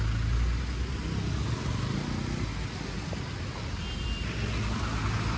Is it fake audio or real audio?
real